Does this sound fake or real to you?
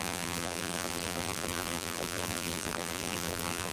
fake